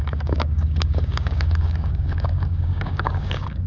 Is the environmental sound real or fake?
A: fake